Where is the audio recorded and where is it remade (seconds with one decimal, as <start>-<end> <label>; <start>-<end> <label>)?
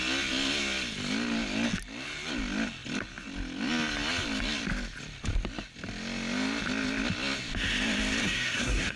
0.0-8.2 recorded; 8.2-9.0 remade